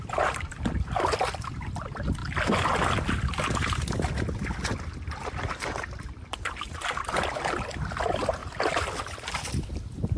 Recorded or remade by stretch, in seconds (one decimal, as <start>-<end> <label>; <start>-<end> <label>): 0.0-2.2 remade; 2.2-7.1 recorded; 7.1-8.4 remade; 8.4-9.2 recorded; 9.2-10.2 remade